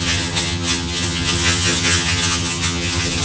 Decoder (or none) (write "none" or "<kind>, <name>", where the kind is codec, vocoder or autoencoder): vocoder, HiFi-GAN